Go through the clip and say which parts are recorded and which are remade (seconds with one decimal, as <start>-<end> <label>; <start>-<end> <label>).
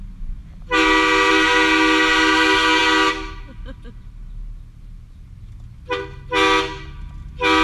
0.0-7.6 recorded